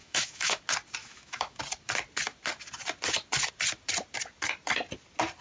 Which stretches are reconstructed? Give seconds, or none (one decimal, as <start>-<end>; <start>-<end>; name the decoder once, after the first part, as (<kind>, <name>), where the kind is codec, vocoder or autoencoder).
0.0-0.6 (autoencoder, DAC-VAE); 1.0-1.6